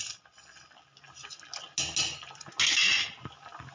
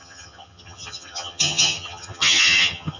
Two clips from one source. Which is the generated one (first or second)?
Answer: second